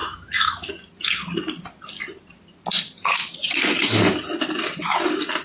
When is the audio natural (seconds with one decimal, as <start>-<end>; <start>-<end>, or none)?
0.7-5.4